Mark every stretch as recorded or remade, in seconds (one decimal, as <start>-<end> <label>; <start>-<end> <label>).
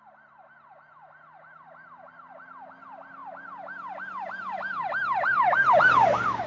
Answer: 0.0-6.5 recorded